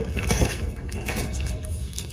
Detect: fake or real fake